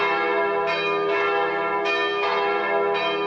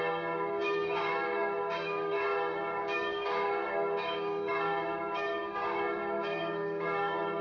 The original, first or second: first